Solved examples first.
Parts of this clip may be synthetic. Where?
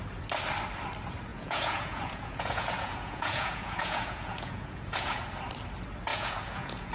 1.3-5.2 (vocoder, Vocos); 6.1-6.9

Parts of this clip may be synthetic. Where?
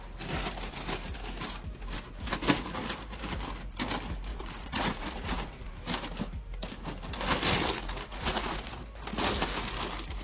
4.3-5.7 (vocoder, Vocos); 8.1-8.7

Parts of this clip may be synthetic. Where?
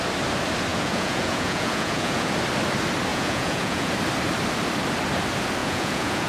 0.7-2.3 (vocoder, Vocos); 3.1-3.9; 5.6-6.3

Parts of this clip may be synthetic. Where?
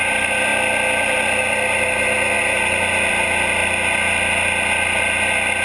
none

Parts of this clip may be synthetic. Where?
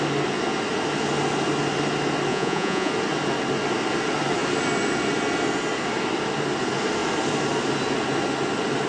2.3-2.9 (vocoder, Vocos)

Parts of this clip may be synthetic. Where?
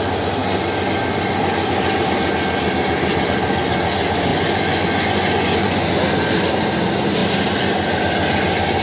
4.3-5.9 (vocoder, Vocos)